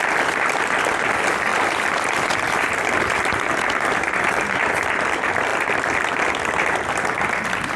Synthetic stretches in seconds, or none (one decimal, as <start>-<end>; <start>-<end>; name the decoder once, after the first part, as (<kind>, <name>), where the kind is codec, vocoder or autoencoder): 1.5-4.9 (vocoder, BigVGAN v2); 5.5-6.1